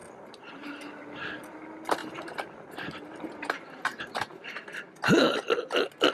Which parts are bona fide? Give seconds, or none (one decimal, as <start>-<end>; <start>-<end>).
1.3-6.1